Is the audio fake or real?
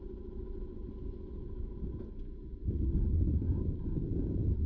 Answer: real